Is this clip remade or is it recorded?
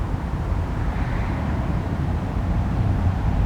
remade